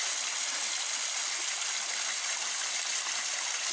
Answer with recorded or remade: recorded